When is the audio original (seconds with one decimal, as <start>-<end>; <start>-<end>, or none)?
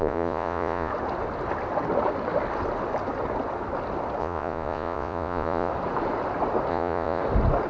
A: 0.9-4.2; 5.7-6.7; 7.2-7.7